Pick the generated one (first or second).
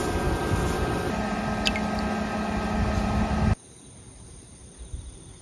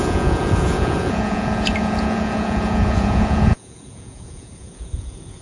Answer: second